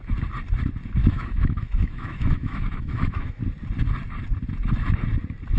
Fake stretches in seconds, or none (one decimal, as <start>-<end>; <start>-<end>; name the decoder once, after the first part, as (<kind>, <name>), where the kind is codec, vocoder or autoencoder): 1.0-3.4 (autoencoder, DAC-VAE)